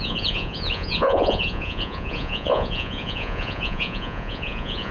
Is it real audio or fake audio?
fake